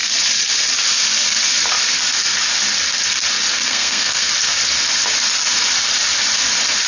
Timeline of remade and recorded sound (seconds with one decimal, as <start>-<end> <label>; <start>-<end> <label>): 0.0-3.7 recorded; 3.7-4.3 remade; 4.3-6.9 recorded